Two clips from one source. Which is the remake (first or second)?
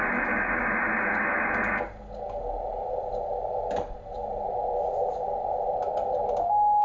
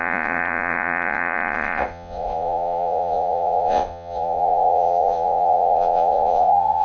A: second